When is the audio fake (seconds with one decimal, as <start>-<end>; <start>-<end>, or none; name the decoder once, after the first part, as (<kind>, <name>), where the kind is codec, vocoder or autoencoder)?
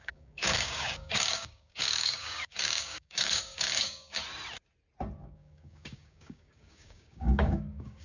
0.0-4.2 (codec, DAC); 5.2-8.0